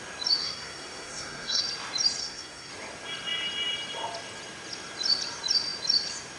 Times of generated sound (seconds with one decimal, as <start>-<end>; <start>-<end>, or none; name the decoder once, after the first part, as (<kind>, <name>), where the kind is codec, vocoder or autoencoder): 0.4-1.6 (codec, SNAC); 2.2-2.7